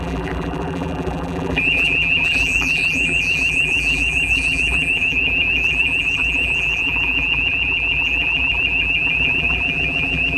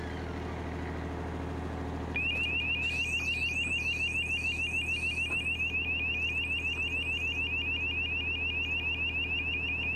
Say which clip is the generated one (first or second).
first